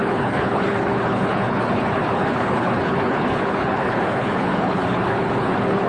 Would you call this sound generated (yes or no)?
yes